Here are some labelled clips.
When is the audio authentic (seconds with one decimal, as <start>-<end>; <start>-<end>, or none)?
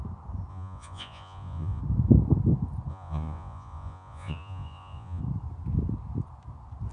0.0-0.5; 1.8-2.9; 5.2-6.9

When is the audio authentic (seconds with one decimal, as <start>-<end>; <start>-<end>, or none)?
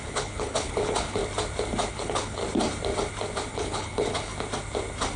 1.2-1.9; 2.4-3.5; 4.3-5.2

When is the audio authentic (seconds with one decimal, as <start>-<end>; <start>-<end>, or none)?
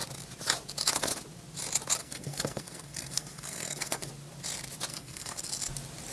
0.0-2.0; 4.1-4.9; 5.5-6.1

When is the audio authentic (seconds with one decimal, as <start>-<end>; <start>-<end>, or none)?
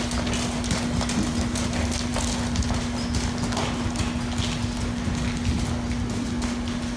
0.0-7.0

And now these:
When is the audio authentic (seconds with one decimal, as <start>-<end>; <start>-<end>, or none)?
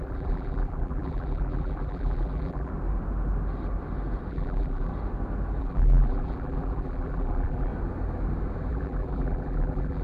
2.7-4.3; 4.9-5.6; 7.7-8.7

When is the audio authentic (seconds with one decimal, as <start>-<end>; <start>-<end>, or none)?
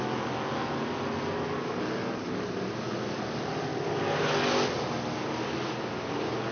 0.0-6.5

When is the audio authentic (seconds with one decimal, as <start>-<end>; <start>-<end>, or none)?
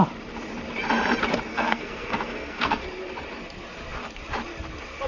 0.0-1.5; 2.8-5.1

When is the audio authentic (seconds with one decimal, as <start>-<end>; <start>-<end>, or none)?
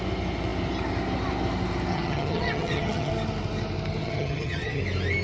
0.0-1.9; 3.1-4.0; 4.8-5.2